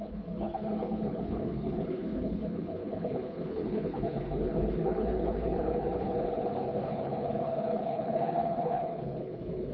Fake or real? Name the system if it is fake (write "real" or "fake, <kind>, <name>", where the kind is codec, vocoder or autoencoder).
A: fake, codec, HILCodec